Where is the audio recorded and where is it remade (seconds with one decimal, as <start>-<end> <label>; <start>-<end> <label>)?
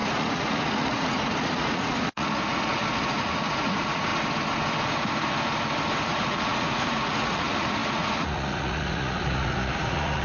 0.0-4.1 remade; 4.1-6.1 recorded; 6.1-10.2 remade